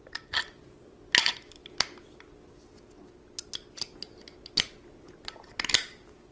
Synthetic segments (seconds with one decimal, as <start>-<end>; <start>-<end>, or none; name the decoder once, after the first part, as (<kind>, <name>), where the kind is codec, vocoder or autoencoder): none